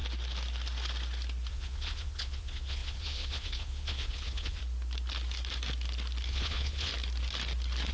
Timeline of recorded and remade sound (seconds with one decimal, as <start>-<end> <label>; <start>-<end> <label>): 0.0-1.5 recorded; 1.5-4.6 remade; 4.6-6.3 recorded; 6.3-6.9 remade; 6.9-7.9 recorded

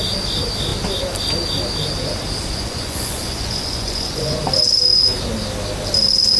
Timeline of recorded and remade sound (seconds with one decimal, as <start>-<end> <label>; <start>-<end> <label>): 0.0-2.5 recorded; 2.5-4.4 remade; 4.4-6.4 recorded

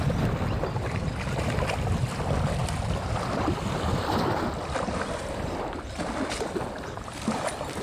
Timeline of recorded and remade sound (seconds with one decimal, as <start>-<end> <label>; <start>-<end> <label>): 0.0-7.8 recorded

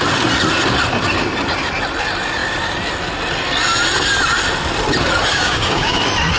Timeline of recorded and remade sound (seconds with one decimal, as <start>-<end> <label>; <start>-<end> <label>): 0.0-5.3 recorded; 5.3-6.0 remade; 6.0-6.4 recorded

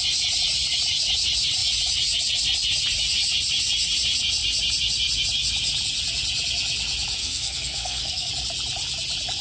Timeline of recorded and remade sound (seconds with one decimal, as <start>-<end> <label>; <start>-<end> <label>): 0.0-7.2 recorded; 7.2-8.3 remade; 8.3-9.4 recorded